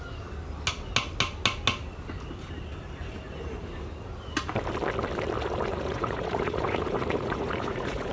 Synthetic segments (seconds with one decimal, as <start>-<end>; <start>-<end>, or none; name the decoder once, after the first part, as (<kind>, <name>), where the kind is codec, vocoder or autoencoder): 5.7-8.1 (vocoder, Vocos)